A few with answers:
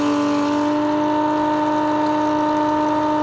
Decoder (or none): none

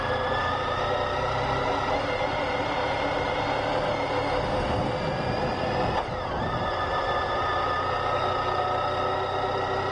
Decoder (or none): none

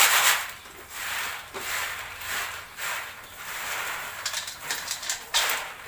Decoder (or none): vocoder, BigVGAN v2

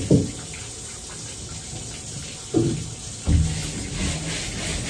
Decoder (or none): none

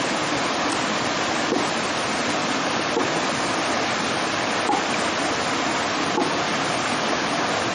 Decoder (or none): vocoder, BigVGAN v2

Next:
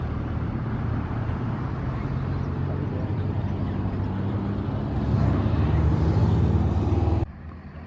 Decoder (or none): none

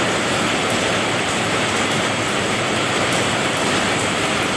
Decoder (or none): vocoder, BigVGAN v2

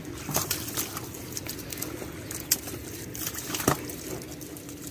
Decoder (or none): none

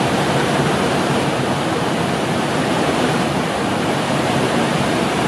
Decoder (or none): vocoder, BigVGAN v2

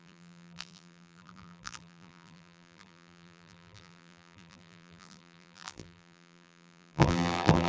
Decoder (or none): vocoder, BigVGAN v2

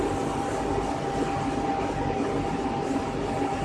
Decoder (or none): vocoder, BigVGAN v2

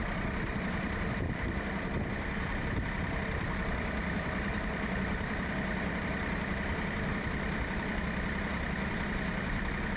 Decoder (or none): vocoder, BigVGAN v2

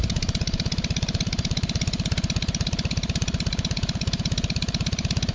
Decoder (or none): vocoder, BigVGAN v2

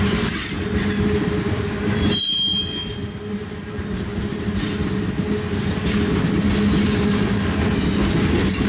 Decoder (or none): none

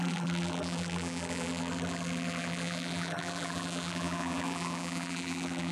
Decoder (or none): vocoder, BigVGAN v2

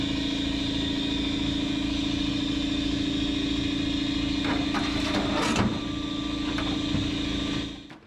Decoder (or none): none